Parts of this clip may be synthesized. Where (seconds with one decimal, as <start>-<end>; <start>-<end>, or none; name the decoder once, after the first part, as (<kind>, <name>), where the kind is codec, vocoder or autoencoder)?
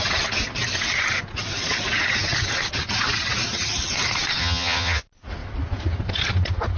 4.4-5.0 (vocoder, HiFi-GAN)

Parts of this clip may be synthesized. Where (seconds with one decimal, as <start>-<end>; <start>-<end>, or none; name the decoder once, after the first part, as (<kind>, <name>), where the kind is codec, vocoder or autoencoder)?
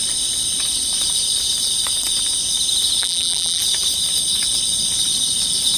3.0-3.6 (vocoder, BigVGAN v2)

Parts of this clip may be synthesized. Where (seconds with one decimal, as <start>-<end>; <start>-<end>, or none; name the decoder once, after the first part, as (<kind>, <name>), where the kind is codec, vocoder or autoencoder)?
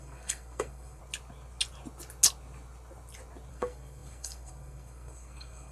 0.0-1.0 (codec, SNAC); 3.5-5.7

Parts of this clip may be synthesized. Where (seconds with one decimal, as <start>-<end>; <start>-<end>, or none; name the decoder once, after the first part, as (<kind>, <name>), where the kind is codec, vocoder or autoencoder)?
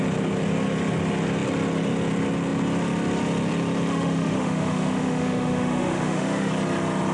3.9-6.5 (autoencoder, DAC-VAE)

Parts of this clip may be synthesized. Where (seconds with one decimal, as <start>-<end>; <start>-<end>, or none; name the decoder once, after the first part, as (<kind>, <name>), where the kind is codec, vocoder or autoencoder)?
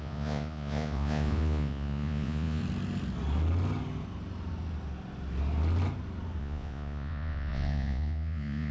0.0-2.6 (vocoder, Vocos); 6.4-8.7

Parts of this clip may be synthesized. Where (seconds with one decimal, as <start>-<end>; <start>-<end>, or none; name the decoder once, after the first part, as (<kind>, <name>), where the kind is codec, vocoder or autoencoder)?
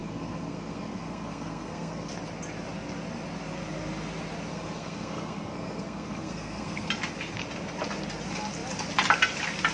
0.0-2.1 (codec, SNAC); 4.5-6.9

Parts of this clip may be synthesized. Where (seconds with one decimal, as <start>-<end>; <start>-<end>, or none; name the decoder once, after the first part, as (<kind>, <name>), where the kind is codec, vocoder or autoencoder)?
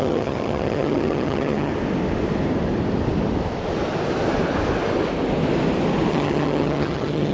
0.0-1.7 (vocoder, HiFi-GAN); 6.1-7.3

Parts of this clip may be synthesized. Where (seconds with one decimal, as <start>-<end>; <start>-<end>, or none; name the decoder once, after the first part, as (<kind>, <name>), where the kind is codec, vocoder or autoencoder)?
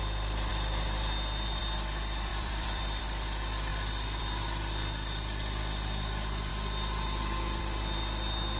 2.3-3.0 (vocoder, BigVGAN v2)